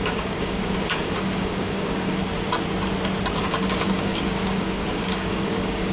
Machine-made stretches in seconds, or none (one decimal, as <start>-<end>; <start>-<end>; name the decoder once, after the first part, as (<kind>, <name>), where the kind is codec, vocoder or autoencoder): 0.0-2.3 (codec, DAC); 3.4-5.9